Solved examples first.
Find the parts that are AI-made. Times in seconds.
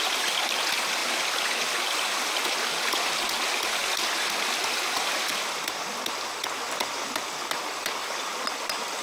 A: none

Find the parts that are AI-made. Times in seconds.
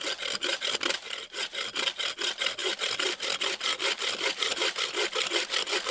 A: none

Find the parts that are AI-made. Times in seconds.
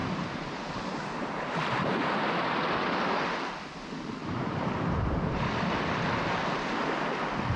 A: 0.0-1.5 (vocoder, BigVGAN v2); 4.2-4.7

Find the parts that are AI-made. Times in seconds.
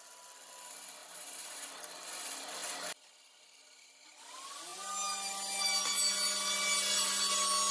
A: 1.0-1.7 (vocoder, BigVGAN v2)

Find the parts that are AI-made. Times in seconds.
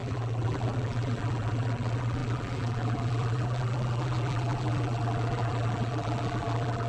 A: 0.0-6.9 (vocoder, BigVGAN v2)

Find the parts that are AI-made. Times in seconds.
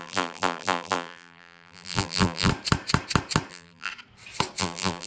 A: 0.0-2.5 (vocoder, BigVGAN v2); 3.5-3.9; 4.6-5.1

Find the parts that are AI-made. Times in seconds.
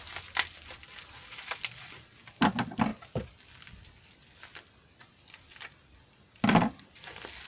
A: none